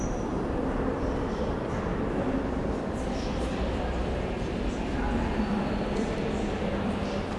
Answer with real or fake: fake